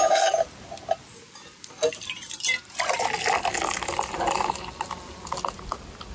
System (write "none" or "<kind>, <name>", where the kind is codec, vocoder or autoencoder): none